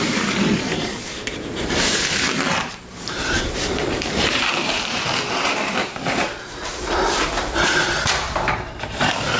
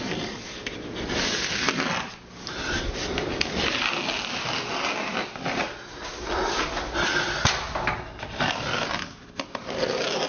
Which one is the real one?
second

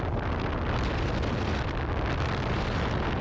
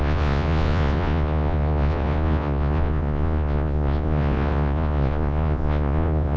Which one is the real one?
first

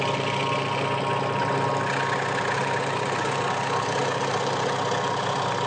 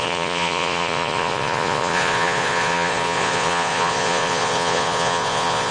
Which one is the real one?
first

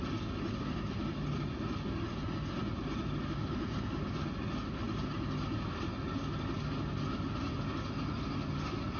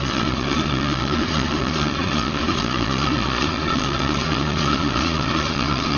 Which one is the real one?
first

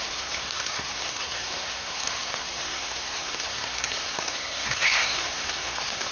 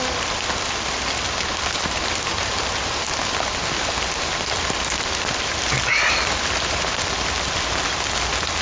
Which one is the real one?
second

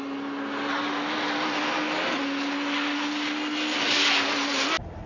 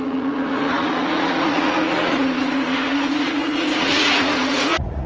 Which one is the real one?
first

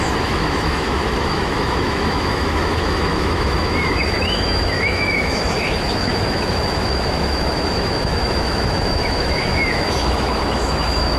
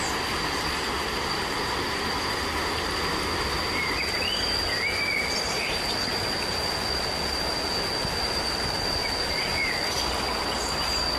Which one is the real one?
second